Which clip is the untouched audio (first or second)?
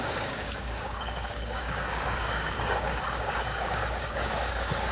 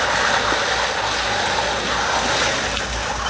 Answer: second